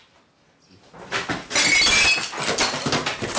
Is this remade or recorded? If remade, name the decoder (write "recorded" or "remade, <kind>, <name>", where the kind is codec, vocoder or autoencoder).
recorded